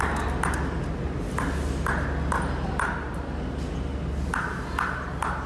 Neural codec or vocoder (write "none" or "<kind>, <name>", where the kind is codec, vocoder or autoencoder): none